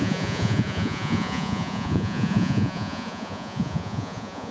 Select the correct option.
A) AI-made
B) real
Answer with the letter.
A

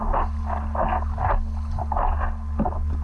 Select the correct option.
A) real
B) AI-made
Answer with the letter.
A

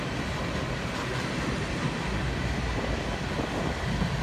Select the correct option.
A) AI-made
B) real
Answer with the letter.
B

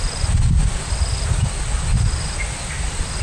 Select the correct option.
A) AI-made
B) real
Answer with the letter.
B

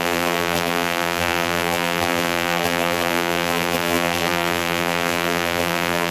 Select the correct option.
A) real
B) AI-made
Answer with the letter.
B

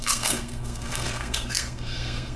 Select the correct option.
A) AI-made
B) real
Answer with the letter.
A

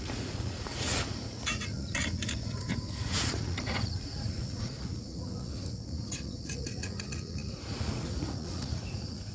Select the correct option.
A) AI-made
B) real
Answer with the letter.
A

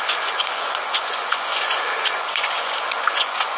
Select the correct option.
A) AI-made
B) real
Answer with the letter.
A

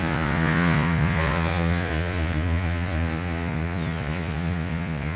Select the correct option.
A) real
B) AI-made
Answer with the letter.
B